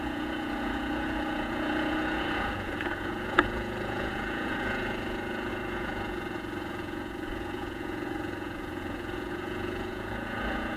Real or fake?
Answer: fake